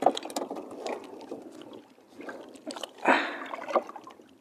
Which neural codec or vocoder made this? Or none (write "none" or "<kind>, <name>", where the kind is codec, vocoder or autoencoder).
none